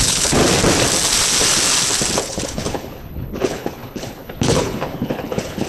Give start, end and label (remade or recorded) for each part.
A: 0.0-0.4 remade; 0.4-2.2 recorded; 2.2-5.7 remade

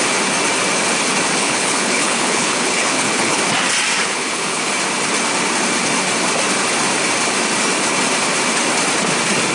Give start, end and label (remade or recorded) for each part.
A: 0.0-1.4 recorded; 1.4-3.4 remade; 3.4-4.0 recorded; 4.0-4.7 remade; 4.7-9.5 recorded